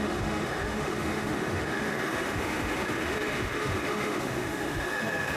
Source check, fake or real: fake